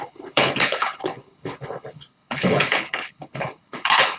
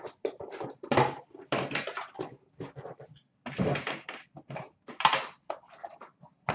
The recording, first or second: second